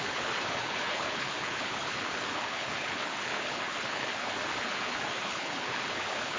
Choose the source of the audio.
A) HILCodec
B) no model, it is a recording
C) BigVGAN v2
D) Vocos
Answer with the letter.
A